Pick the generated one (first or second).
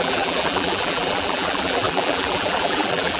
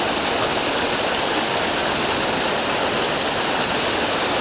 first